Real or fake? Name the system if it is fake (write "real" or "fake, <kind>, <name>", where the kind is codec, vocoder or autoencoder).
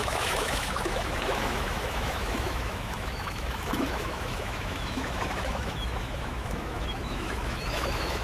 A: fake, autoencoder, DAC-VAE